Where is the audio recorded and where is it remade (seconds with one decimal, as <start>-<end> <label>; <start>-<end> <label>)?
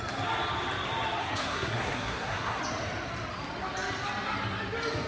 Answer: 0.0-1.2 recorded; 1.2-2.6 remade; 2.6-5.1 recorded